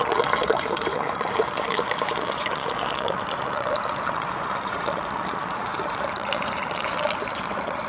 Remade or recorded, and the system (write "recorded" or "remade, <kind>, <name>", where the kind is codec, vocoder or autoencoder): remade, vocoder, Vocos